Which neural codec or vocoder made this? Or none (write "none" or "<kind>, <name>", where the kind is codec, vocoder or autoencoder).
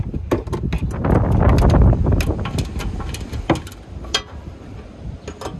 none